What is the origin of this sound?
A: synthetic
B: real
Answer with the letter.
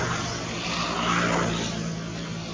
B